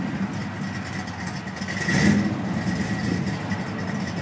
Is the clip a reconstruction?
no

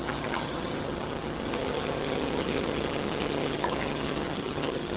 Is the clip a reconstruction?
yes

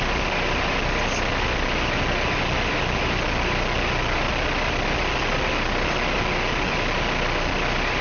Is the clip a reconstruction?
no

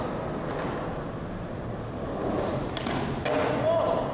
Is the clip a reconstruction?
no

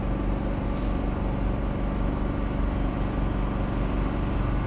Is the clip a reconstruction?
no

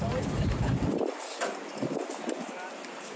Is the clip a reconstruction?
no